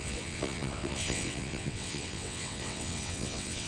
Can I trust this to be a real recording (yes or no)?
no